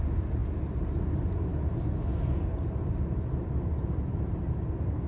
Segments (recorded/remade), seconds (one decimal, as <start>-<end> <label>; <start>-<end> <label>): 0.0-5.1 recorded